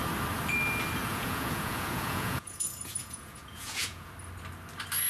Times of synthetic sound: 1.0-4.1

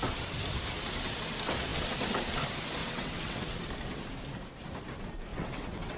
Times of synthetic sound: 2.8-3.6; 5.3-6.0

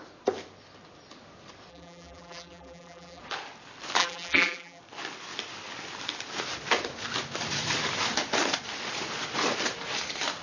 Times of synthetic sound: 1.7-3.2; 4.0-4.8